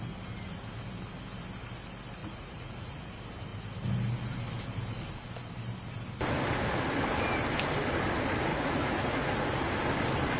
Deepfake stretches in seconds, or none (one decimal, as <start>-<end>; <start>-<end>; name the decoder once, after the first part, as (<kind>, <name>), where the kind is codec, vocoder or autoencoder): 2.2-3.1 (vocoder, Vocos); 8.5-9.7